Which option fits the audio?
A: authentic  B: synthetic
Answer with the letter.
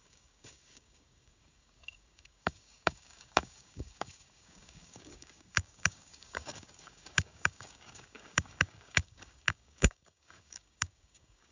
B